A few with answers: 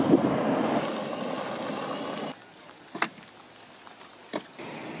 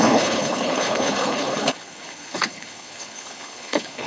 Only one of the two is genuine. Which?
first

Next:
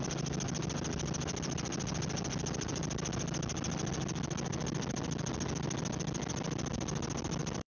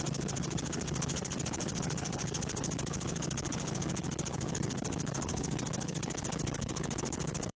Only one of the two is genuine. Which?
first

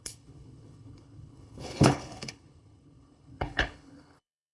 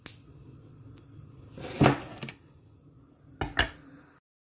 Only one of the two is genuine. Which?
second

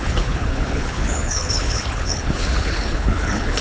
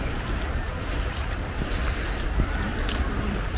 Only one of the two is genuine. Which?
second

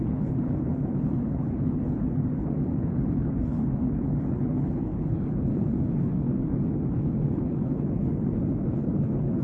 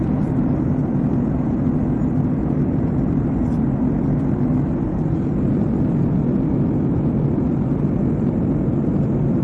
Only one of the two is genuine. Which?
second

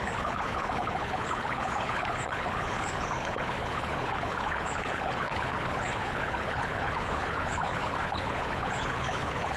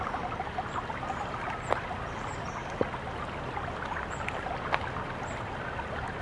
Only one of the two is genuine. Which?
second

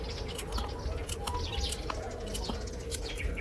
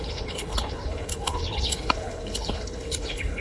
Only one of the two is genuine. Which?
first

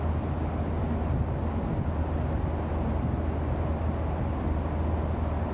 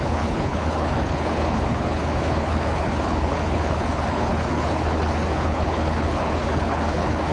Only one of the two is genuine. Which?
first